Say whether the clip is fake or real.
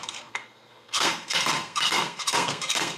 fake